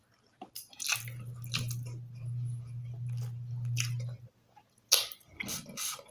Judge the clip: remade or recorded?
recorded